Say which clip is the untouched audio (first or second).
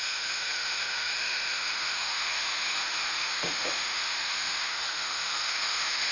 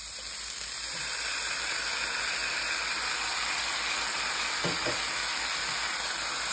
second